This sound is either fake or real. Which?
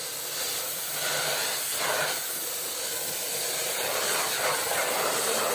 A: real